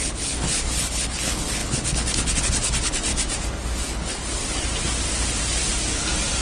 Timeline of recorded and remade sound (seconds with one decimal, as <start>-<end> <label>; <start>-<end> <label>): 0.0-3.1 remade; 3.1-3.9 recorded; 3.9-4.4 remade; 4.4-6.4 recorded